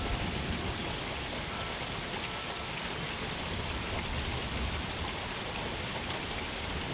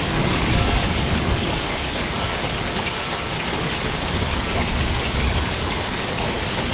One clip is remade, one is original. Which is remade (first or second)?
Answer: second